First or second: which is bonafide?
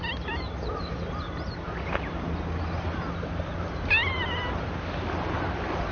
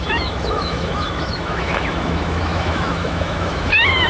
first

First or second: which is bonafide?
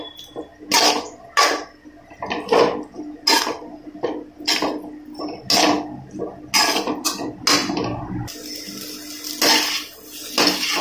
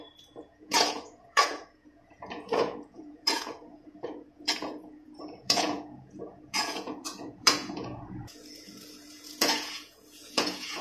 first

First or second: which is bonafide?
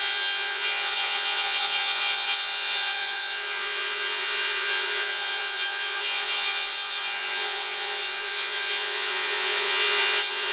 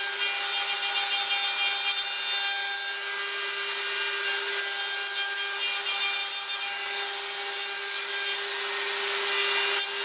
second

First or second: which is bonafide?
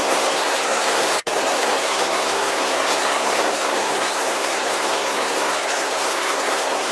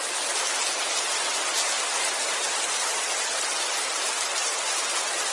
second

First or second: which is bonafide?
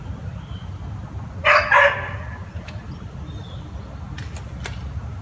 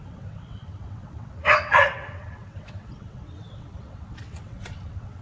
first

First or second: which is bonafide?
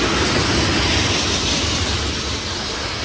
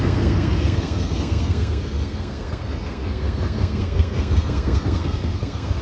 first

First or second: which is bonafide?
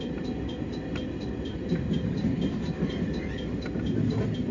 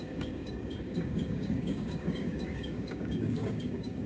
first